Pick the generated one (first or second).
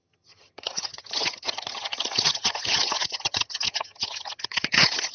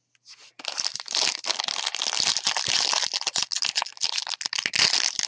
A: first